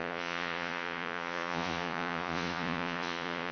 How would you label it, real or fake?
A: fake